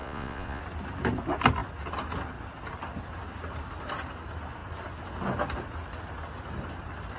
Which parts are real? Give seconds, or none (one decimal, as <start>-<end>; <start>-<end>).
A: 0.6-7.2